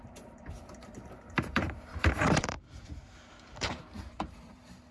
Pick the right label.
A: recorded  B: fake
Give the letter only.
B